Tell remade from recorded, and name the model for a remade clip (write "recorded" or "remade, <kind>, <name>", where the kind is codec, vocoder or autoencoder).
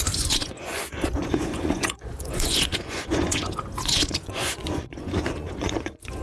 remade, vocoder, Vocos